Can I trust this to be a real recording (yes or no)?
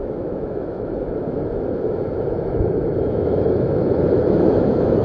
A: no